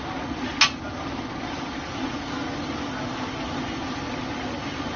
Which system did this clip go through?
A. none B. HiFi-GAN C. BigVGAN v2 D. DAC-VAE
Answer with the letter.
A